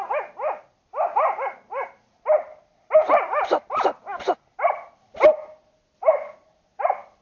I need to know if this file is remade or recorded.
recorded